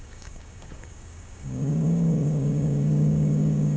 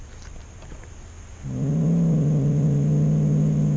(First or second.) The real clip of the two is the second